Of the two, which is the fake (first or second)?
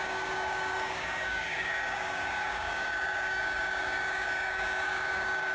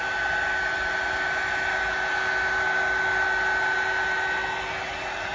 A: first